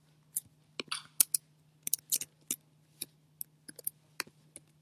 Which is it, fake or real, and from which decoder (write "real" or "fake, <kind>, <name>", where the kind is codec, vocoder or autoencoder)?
real